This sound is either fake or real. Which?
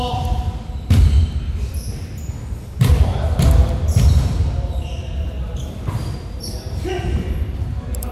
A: fake